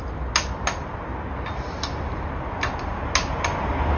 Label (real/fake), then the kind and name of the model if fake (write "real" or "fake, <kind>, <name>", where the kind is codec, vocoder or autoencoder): real